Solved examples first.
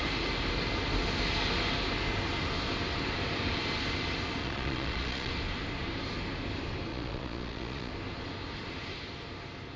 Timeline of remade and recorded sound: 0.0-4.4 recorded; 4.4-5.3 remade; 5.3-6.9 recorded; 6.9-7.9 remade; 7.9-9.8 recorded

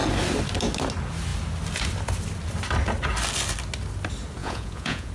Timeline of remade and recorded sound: 0.0-4.4 recorded; 4.4-5.1 remade

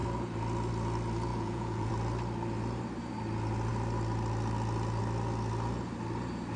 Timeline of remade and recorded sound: 0.0-1.3 recorded; 1.3-1.9 remade; 1.9-6.6 recorded

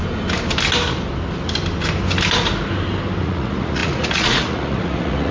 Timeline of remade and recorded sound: 0.0-3.2 recorded; 3.2-5.3 remade

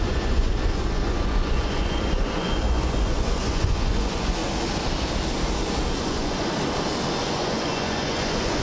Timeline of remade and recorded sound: 0.0-4.4 remade; 4.4-6.0 recorded; 6.0-6.5 remade; 6.5-7.2 recorded; 7.2-8.6 remade

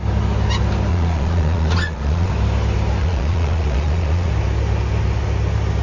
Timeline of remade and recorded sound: 0.0-0.9 recorded; 0.9-2.3 remade; 2.3-3.0 recorded; 3.0-4.3 remade; 4.3-5.8 recorded